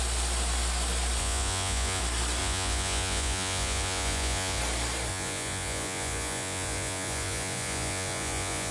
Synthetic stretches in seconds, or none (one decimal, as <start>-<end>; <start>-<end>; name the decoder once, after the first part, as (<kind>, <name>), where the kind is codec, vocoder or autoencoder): 1.2-2.0 (vocoder, Vocos); 2.4-4.6; 5.1-8.7